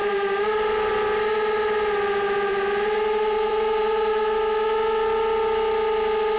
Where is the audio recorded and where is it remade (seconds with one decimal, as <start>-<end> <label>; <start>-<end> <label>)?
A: 0.0-0.9 remade; 0.9-2.5 recorded; 2.5-4.1 remade; 4.1-6.4 recorded